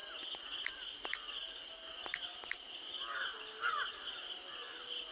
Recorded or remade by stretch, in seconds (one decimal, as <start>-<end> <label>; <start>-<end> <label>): 0.0-5.1 recorded